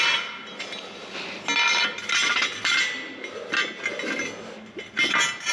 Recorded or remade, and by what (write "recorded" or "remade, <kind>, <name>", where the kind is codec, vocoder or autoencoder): recorded